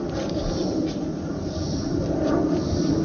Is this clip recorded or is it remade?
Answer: recorded